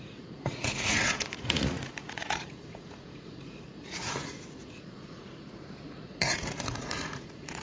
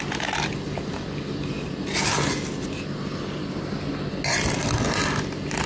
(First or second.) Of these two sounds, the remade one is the first